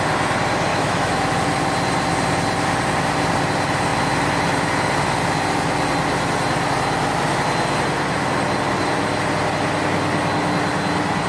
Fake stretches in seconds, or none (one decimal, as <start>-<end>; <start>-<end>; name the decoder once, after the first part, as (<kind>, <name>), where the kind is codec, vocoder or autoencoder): 0.7-1.3 (autoencoder, DAC-VAE)